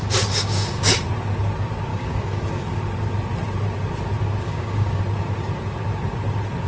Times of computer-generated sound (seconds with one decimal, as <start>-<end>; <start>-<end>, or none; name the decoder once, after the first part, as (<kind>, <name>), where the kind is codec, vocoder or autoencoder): 0.0-0.9 (codec, DAC); 1.9-2.8; 4.4-5.0